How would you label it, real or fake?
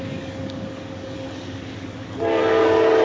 fake